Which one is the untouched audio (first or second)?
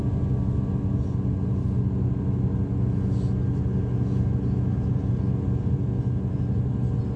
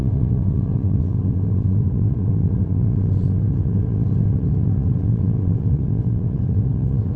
first